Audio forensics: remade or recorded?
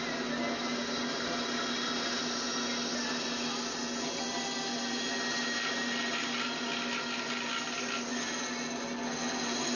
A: recorded